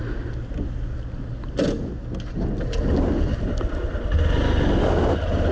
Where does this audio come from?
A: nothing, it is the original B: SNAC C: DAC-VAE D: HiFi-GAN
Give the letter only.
A